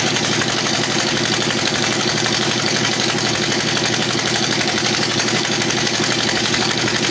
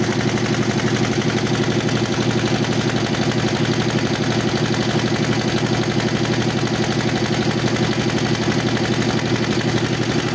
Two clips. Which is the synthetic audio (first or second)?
first